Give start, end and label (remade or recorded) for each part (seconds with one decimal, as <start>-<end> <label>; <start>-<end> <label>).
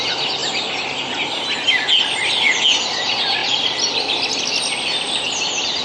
0.0-5.8 recorded